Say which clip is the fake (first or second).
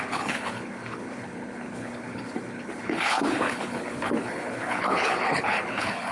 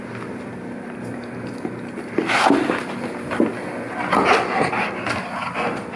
first